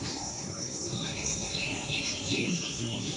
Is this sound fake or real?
fake